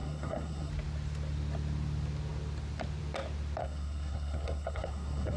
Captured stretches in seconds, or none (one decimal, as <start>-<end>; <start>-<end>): 0.7-3.6